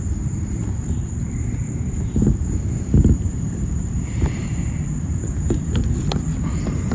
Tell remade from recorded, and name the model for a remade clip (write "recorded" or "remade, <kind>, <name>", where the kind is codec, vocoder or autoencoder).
remade, vocoder, BigVGAN v2